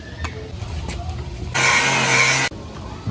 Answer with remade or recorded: recorded